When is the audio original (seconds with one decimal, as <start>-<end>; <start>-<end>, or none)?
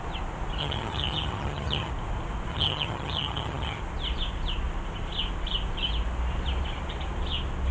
0.0-0.6; 1.9-2.5; 3.8-7.7